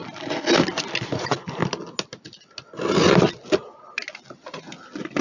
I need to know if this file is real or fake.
real